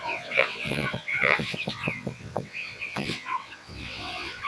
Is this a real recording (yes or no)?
no